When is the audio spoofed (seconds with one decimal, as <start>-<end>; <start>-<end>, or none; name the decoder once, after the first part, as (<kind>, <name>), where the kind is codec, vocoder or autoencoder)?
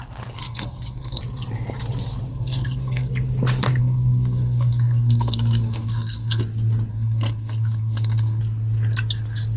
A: 0.4-1.2 (codec, SNAC); 2.3-3.1; 3.8-6.4; 6.9-8.4